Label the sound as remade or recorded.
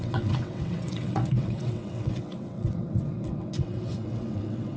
remade